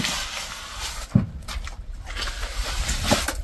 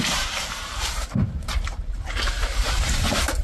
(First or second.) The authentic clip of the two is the first